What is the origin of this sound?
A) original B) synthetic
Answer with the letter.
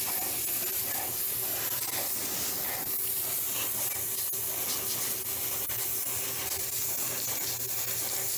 A